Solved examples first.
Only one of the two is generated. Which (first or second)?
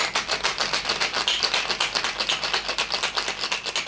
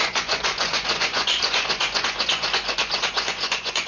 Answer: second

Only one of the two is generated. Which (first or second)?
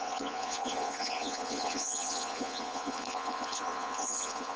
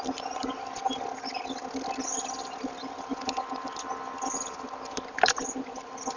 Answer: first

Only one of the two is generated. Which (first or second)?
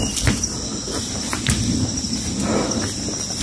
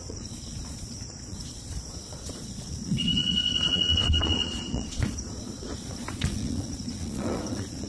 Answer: second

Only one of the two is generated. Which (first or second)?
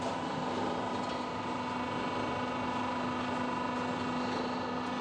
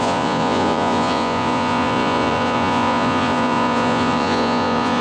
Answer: second